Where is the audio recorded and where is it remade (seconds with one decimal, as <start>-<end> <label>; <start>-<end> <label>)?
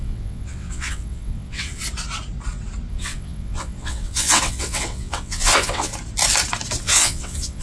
0.0-1.8 remade; 1.8-2.9 recorded; 2.9-5.9 remade; 5.9-6.8 recorded; 6.8-7.6 remade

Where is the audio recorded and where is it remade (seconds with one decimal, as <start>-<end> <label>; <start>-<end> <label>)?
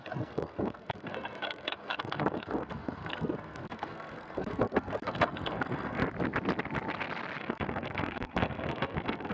0.0-6.0 remade; 6.0-7.4 recorded; 7.4-9.3 remade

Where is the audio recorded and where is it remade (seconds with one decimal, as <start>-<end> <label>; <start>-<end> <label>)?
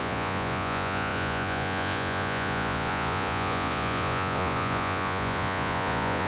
0.0-6.3 remade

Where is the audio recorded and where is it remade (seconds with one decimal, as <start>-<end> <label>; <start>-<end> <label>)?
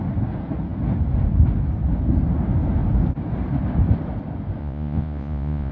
0.0-4.6 recorded; 4.6-5.7 remade